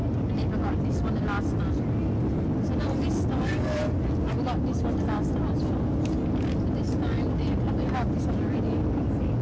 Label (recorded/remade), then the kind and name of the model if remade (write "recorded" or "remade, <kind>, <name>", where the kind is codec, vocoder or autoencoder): recorded